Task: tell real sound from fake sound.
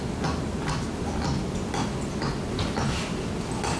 real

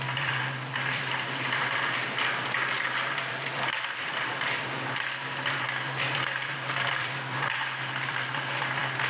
fake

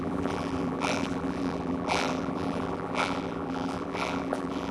fake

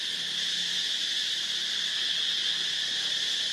fake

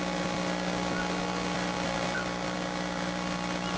real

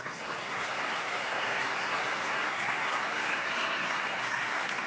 fake